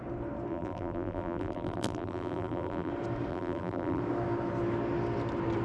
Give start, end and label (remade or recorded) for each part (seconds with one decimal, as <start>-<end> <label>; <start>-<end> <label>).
0.0-0.5 recorded; 0.5-2.9 remade; 2.9-3.3 recorded; 3.3-4.0 remade; 4.0-5.6 recorded